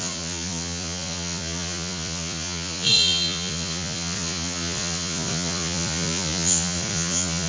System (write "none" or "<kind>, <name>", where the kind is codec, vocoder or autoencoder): vocoder, Vocos